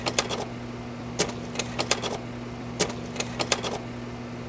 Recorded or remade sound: recorded